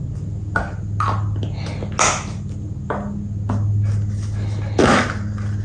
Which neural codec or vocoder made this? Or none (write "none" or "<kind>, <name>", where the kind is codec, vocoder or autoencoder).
none